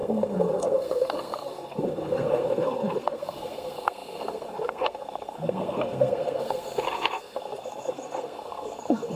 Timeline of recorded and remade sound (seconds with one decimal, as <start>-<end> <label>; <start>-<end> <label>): 0.0-9.2 remade